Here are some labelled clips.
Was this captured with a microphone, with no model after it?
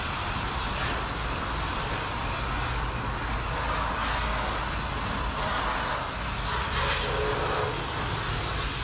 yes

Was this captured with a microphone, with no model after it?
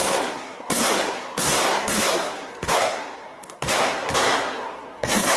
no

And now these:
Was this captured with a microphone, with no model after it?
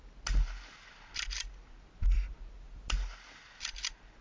yes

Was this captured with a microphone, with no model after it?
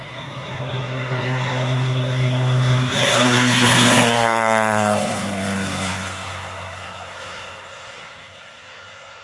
no